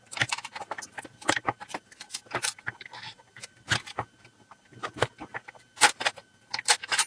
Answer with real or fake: real